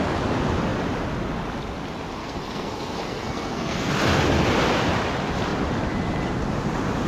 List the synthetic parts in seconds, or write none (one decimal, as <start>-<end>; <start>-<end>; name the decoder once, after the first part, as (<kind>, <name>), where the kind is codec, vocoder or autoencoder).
2.2-3.9 (codec, SNAC)